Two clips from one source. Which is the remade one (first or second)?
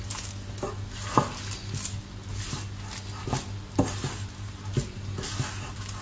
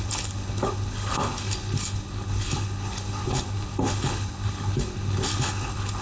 second